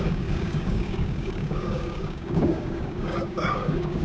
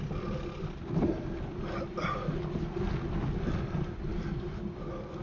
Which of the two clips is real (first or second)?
second